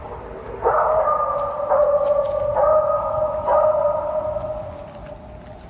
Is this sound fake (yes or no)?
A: no